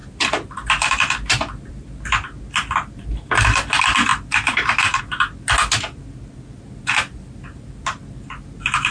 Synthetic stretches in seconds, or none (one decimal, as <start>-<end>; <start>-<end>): 4.1-5.0